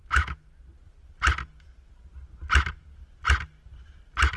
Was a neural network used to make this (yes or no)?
no